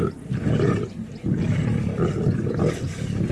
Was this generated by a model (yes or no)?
no